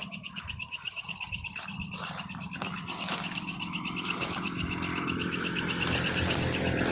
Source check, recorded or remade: recorded